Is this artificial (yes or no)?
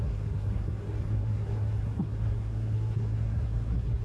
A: yes